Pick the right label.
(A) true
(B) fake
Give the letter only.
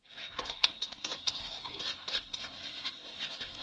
B